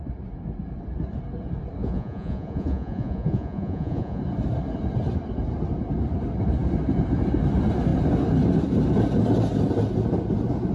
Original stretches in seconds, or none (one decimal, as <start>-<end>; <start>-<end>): 0.0-1.8; 4.2-10.7